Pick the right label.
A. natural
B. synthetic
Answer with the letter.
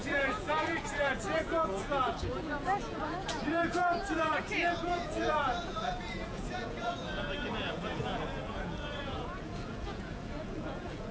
B